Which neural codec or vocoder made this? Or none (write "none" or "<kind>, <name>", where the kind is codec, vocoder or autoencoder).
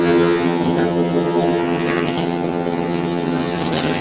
vocoder, HiFi-GAN